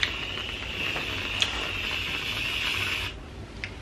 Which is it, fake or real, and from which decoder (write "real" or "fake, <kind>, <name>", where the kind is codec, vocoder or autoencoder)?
real